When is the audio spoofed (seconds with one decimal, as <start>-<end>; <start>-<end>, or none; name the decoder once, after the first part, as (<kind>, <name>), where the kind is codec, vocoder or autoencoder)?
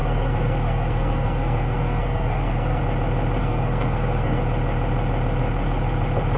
0.0-2.8 (codec, SNAC); 3.4-4.4